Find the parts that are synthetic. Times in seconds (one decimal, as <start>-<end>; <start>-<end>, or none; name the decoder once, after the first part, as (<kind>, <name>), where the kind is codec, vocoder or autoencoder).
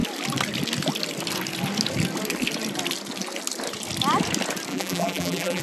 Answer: 4.7-5.6 (vocoder, BigVGAN v2)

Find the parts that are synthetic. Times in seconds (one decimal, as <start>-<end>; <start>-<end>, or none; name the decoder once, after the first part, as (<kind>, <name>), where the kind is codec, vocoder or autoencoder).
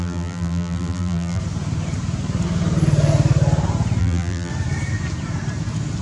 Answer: 0.0-1.4 (vocoder, BigVGAN v2); 4.0-4.5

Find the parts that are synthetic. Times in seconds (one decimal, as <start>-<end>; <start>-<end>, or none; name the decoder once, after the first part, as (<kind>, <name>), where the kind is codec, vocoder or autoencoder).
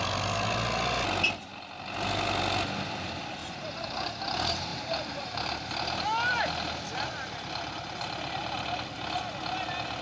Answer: 3.4-4.2 (vocoder, BigVGAN v2); 4.7-5.7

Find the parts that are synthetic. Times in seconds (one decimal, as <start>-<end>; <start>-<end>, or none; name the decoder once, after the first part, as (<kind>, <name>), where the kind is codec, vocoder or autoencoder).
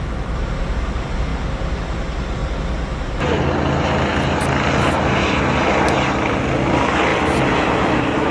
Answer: 7.1-8.3 (vocoder, BigVGAN v2)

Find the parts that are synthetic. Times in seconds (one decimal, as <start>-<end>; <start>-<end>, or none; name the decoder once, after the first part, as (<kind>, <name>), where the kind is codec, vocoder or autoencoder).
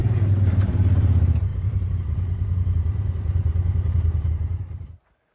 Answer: 0.0-5.3 (vocoder, BigVGAN v2)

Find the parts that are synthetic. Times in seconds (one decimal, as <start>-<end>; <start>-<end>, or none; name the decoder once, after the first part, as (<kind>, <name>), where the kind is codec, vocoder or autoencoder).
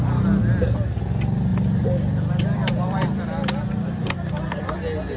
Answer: 1.5-4.6 (vocoder, BigVGAN v2)